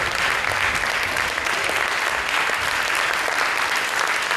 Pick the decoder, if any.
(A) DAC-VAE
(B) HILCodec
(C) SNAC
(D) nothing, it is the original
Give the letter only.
D